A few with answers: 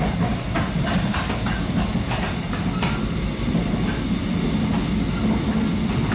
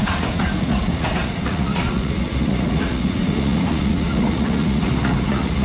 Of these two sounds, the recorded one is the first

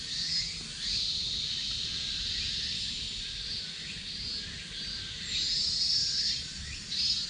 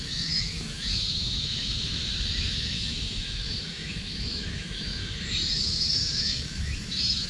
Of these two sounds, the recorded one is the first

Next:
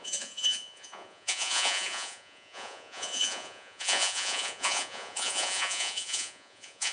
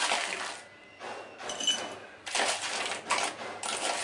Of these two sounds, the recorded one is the second